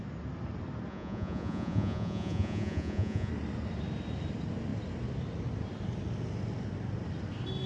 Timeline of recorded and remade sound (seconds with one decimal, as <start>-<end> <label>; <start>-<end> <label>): 0.0-0.9 recorded; 0.9-3.3 remade; 3.3-7.7 recorded